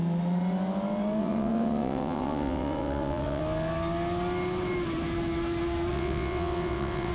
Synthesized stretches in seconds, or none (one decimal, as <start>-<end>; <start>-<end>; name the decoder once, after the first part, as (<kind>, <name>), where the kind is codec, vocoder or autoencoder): 1.2-3.4 (vocoder, WaveNeXt); 5.9-7.1